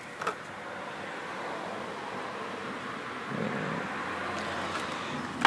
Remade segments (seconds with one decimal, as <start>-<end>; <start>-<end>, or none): none